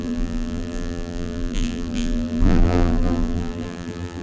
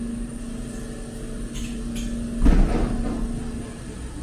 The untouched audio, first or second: second